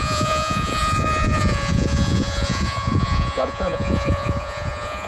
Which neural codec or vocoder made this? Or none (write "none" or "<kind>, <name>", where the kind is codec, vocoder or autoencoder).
vocoder, Vocos